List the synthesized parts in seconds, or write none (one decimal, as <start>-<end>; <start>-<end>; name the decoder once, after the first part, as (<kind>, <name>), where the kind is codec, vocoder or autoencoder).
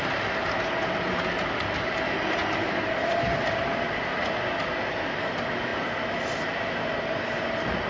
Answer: none